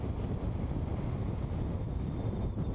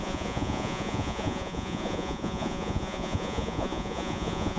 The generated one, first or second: second